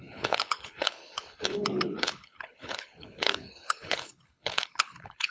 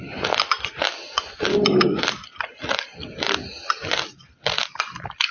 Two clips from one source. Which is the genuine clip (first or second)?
second